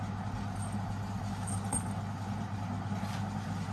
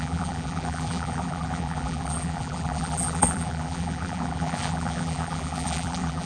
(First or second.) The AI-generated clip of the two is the second